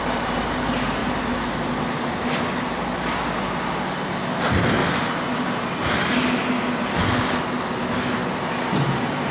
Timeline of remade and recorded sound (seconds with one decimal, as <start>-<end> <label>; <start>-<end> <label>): 0.0-9.3 recorded